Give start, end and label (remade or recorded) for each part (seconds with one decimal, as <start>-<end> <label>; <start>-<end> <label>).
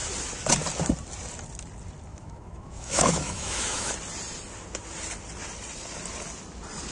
0.0-2.1 recorded; 2.1-3.9 remade; 3.9-6.9 recorded